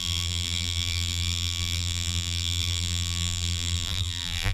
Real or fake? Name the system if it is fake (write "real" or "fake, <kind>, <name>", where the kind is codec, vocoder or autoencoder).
fake, vocoder, BigVGAN v2